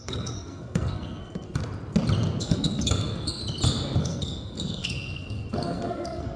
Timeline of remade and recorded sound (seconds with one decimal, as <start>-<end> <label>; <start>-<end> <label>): 0.0-1.6 remade; 1.6-2.4 recorded; 2.4-3.4 remade; 3.4-4.0 recorded; 4.0-6.4 remade